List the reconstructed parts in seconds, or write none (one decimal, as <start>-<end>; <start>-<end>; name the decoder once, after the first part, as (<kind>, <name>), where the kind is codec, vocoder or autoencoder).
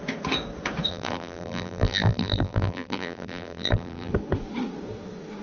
0.9-4.1 (vocoder, BigVGAN v2)